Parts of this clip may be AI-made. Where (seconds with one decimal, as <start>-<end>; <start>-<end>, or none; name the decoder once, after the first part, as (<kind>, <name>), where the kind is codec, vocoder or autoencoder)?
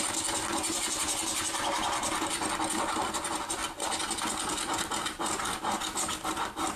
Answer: 0.0-3.6 (vocoder, BigVGAN v2)